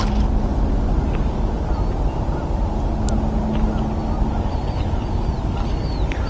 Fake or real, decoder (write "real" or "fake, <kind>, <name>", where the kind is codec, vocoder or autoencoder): real